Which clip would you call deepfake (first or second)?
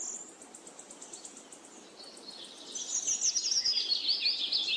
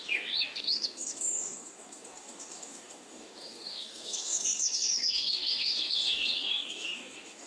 second